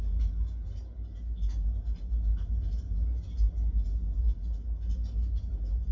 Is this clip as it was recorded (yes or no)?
yes